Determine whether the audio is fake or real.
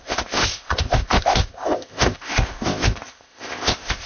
fake